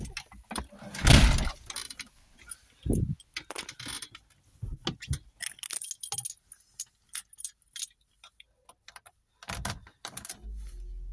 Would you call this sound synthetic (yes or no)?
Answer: no